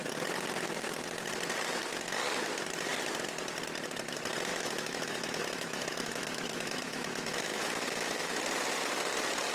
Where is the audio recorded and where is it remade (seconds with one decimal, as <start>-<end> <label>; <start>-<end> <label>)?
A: 0.0-4.5 recorded; 4.5-8.3 remade; 8.3-9.5 recorded